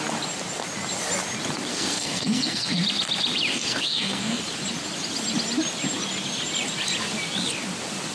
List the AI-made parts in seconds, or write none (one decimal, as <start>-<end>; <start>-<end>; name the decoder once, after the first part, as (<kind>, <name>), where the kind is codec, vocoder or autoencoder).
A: 1.7-2.8 (codec, SNAC); 3.5-4.4